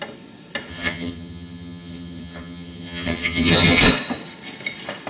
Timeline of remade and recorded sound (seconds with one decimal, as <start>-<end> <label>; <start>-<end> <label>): 0.0-0.7 recorded; 0.7-3.8 remade; 3.8-5.1 recorded